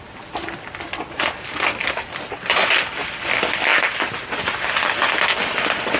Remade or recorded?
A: recorded